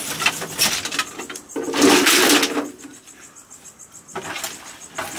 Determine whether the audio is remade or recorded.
recorded